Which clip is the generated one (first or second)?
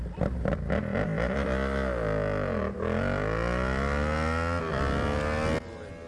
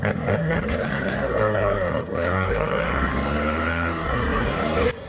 second